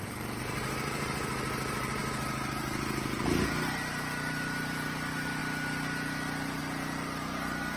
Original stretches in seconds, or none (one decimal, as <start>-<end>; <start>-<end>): 5.4-6.6